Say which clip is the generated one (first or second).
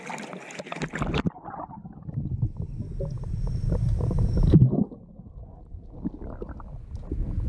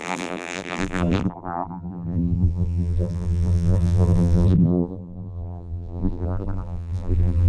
second